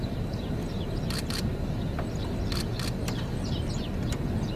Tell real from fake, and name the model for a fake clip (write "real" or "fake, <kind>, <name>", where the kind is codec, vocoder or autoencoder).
real